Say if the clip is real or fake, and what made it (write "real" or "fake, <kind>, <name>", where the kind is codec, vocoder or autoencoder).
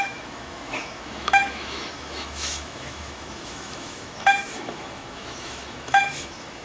fake, autoencoder, DAC-VAE